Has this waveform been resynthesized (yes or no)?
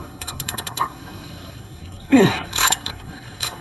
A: yes